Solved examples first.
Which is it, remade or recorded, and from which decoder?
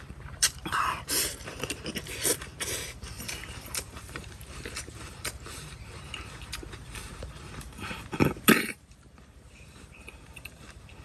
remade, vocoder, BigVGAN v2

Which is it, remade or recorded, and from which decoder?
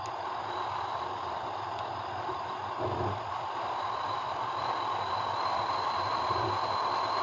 recorded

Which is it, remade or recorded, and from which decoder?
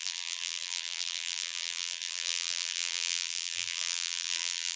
remade, vocoder, BigVGAN v2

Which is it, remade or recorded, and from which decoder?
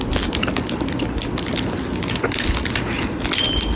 recorded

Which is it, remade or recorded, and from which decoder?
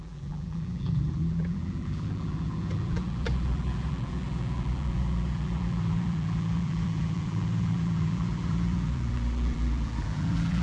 remade, vocoder, BigVGAN v2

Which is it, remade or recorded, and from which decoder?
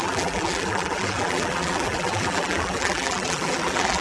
remade, vocoder, BigVGAN v2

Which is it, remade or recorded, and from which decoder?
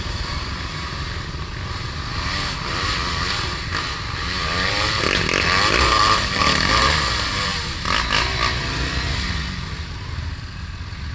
recorded